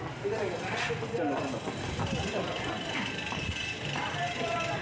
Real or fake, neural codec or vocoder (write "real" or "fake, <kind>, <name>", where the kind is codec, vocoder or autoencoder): real